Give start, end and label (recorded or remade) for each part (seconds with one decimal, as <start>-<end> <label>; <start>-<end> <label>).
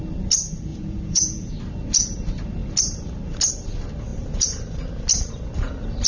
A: 0.0-0.7 recorded; 0.7-1.5 remade; 1.5-6.1 recorded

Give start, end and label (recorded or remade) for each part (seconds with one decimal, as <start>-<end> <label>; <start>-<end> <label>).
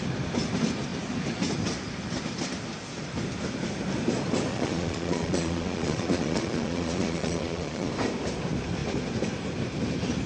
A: 0.0-4.5 recorded; 4.5-7.9 remade; 7.9-10.3 recorded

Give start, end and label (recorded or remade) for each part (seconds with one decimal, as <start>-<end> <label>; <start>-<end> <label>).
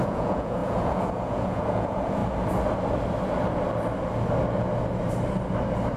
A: 0.0-2.2 remade; 2.2-6.0 recorded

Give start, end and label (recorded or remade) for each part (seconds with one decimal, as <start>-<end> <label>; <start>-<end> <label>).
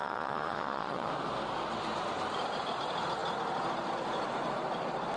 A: 0.0-1.1 remade; 1.1-5.2 recorded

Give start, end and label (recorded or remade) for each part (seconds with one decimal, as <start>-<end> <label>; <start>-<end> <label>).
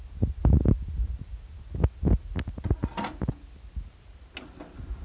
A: 0.0-5.0 recorded